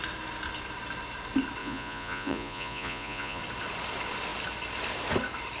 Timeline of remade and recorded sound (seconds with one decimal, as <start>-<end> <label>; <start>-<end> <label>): 0.0-1.6 recorded; 1.6-3.4 remade; 3.4-5.6 recorded